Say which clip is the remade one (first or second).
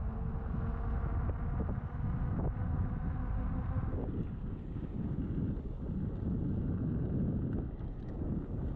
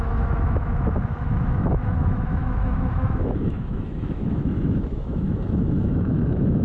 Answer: second